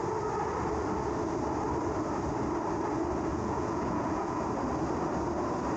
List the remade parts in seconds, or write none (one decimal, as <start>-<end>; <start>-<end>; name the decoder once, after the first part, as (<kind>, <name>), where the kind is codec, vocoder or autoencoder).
3.3-4.4 (vocoder, Vocos)